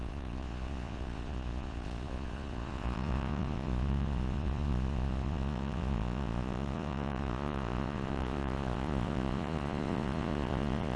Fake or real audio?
fake